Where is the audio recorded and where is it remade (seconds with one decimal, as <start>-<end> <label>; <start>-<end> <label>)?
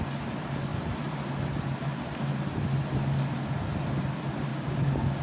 0.0-4.5 recorded; 4.5-5.2 remade